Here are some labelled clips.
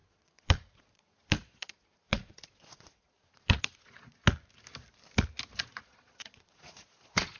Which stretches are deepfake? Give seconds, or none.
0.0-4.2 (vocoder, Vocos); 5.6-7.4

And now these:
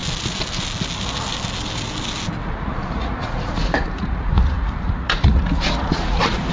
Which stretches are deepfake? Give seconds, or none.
2.4-6.5 (vocoder, Vocos)

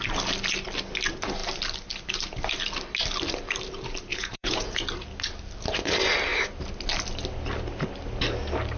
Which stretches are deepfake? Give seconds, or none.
4.1-4.8 (vocoder, Vocos)

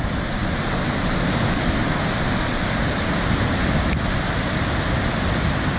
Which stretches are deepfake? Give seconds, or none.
none